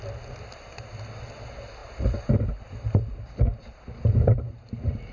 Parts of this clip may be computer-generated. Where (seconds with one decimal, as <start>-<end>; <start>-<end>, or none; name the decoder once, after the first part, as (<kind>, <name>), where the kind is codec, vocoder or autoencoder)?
1.8-5.1 (vocoder, BigVGAN v2)